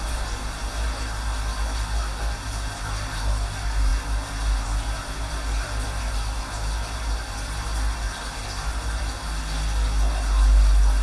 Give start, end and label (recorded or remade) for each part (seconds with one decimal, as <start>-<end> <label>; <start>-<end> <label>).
0.0-11.0 recorded